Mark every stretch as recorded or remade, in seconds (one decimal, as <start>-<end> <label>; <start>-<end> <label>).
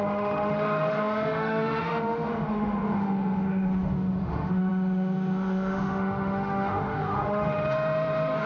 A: 0.0-8.5 remade